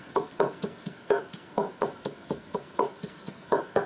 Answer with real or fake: fake